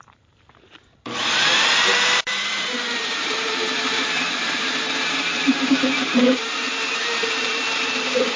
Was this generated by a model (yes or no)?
yes